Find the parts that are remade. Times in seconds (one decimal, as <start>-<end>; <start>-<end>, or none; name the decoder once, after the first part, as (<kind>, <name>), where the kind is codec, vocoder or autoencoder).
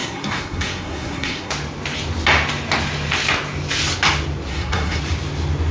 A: 0.0-1.5 (codec, SNAC); 4.5-5.0